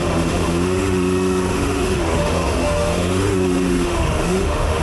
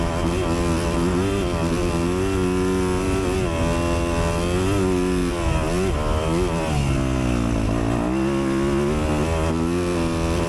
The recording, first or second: second